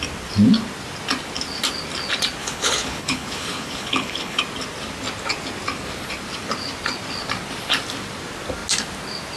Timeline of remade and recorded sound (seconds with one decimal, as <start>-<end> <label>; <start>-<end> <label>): 0.0-2.4 recorded; 2.4-4.4 remade; 4.4-9.4 recorded